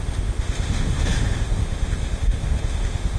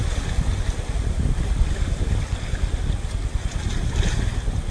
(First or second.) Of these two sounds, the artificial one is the first